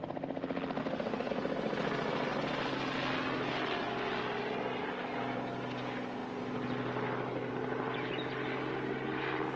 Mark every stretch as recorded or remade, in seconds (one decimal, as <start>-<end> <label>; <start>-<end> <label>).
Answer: 0.0-0.8 recorded; 0.8-1.3 remade; 1.3-9.6 recorded

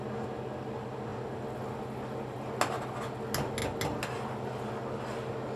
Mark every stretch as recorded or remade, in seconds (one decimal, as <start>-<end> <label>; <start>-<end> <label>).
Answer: 0.0-5.6 recorded

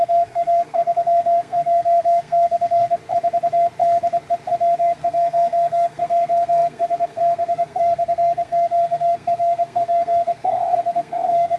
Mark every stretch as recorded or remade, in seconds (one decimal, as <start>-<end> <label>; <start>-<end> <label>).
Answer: 0.0-3.0 remade; 3.0-4.8 recorded; 4.8-11.6 remade

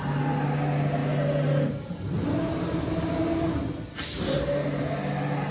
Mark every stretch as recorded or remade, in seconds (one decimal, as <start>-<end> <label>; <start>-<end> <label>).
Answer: 0.0-5.5 recorded

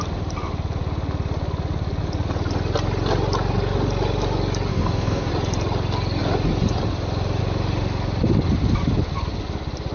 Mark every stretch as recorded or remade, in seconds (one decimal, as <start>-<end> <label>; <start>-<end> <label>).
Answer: 0.0-4.7 recorded; 4.7-5.3 remade; 5.3-9.9 recorded